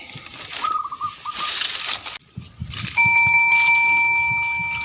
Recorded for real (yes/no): yes